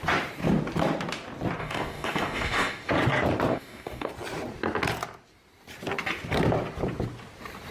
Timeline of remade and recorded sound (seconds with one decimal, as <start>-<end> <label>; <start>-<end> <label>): 0.0-1.6 recorded; 1.6-2.9 remade; 2.9-3.5 recorded; 3.5-4.1 remade; 4.1-7.7 recorded